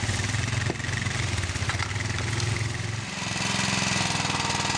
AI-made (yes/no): no